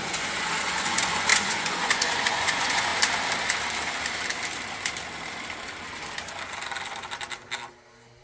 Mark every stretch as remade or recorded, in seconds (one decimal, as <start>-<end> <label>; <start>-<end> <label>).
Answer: 0.0-2.9 remade; 2.9-8.2 recorded